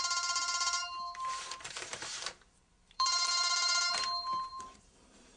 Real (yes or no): no